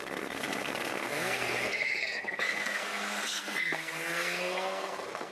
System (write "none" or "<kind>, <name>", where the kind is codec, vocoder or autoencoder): codec, SNAC